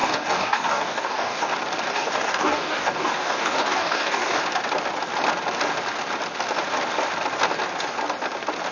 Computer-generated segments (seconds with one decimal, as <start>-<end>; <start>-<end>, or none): 0.0-1.5; 1.9-4.4